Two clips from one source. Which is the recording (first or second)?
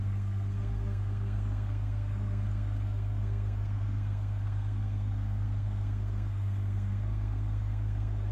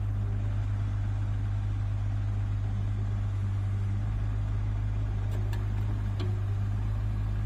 second